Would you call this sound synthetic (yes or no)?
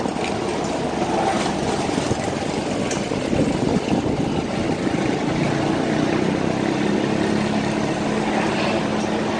no